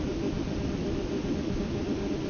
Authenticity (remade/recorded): recorded